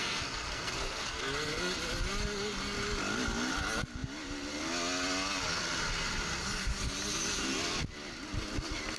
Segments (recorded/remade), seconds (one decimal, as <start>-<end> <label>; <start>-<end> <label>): 0.0-1.7 remade; 1.7-9.0 recorded